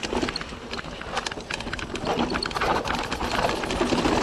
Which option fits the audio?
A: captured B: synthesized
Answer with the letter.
A